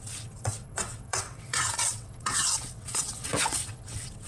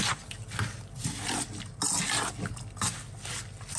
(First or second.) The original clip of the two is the second